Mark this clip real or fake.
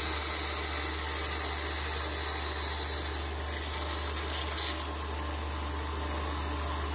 real